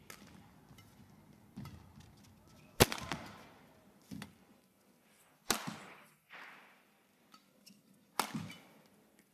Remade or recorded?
recorded